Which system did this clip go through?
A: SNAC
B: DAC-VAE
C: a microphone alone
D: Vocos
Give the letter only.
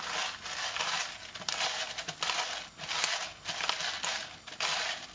C